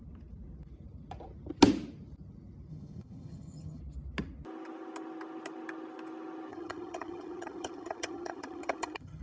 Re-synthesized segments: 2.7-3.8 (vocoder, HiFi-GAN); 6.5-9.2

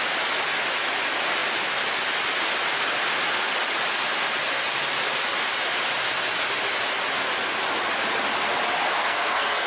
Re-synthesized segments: 9.0-9.7 (codec, SNAC)

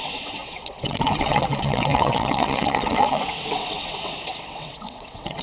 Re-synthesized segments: 0.0-5.4 (vocoder, WaveNeXt)

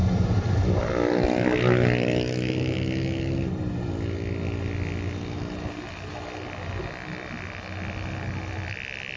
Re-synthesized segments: none

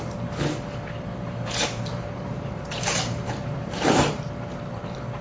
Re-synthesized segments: 1.9-3.9 (vocoder, BigVGAN v2)